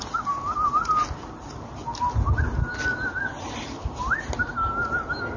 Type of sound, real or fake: real